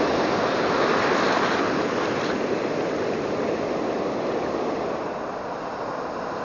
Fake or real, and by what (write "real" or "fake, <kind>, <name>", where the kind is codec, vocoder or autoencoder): real